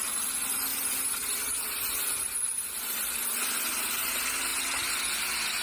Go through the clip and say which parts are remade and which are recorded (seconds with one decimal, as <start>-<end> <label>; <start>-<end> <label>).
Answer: 0.0-0.7 recorded; 0.7-4.1 remade; 4.1-5.6 recorded